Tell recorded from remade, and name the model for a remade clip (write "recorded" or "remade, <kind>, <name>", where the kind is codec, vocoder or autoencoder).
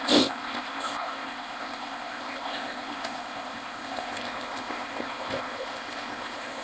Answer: remade, codec, ZipCodec